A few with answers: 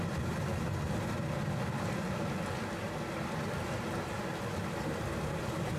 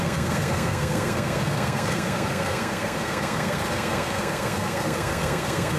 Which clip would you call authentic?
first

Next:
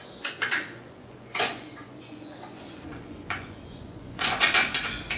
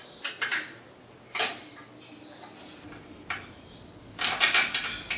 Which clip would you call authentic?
second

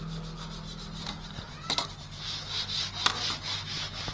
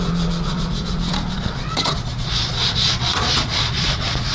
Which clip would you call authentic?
first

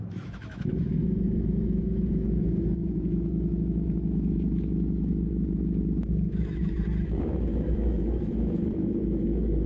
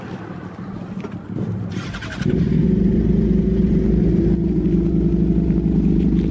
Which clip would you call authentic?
second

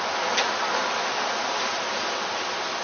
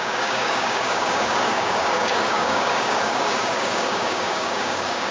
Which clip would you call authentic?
first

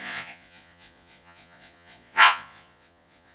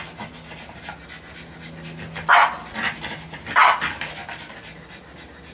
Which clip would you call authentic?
second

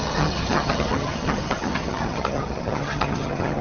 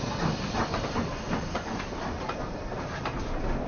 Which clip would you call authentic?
second